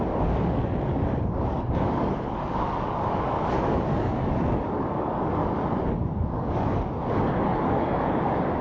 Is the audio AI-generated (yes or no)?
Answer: yes